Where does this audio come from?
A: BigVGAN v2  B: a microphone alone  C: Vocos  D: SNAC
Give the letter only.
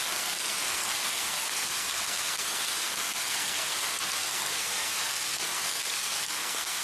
D